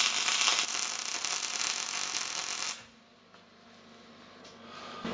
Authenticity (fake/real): real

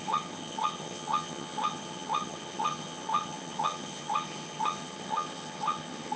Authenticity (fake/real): fake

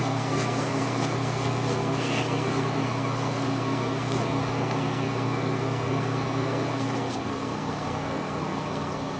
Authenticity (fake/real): fake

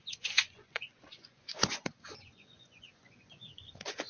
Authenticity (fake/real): fake